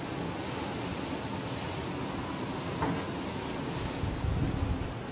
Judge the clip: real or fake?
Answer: real